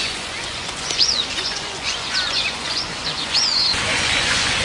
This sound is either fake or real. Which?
fake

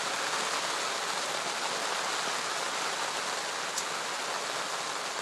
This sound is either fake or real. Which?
real